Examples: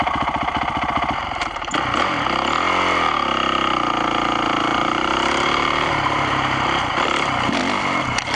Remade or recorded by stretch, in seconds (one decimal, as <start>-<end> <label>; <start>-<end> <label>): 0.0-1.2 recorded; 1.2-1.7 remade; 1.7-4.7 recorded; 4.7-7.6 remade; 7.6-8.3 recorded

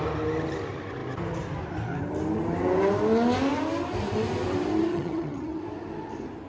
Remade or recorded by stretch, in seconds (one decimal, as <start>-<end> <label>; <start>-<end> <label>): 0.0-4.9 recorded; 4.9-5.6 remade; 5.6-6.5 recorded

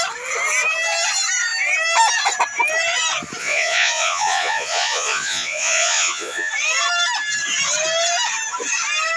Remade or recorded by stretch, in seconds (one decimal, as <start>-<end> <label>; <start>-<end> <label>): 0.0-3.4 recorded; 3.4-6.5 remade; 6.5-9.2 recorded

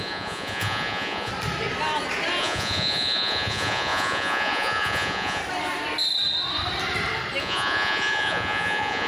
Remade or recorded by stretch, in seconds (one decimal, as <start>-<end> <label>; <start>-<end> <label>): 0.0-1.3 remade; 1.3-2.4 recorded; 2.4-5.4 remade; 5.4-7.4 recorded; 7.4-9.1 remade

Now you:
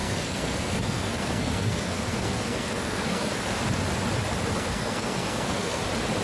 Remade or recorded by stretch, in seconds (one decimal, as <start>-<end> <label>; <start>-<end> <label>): 0.0-3.6 remade; 3.6-4.5 recorded; 4.5-5.8 remade; 5.8-6.2 recorded

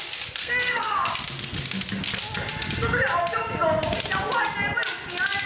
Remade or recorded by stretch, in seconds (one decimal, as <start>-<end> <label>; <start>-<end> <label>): 0.0-0.4 recorded; 0.4-1.1 remade; 1.1-5.5 recorded

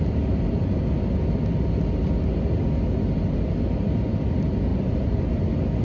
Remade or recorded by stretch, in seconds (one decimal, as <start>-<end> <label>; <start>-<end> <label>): 0.0-4.7 recorded; 4.7-5.3 remade; 5.3-5.8 recorded

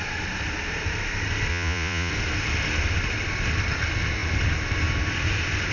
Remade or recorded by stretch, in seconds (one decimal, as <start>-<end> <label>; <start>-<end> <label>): 0.0-1.5 recorded; 1.5-2.1 remade; 2.1-5.7 recorded